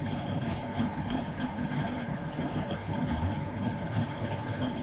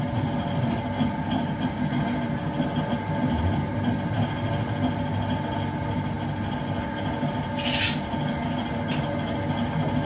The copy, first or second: first